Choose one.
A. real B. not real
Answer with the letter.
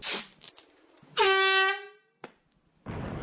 A